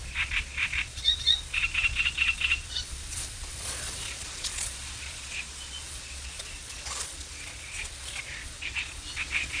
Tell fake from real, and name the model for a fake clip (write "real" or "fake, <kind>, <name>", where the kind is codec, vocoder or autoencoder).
fake, vocoder, Vocos